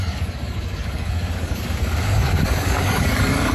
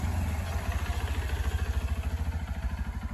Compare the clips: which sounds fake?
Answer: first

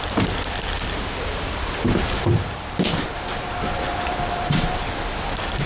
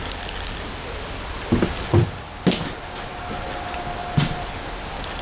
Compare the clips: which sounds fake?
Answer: first